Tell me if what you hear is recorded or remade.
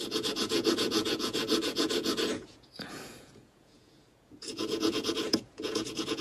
remade